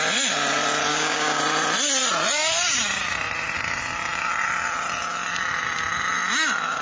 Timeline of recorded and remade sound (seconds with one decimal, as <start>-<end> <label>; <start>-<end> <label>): 0.0-0.9 recorded; 0.9-1.4 remade; 1.4-6.8 recorded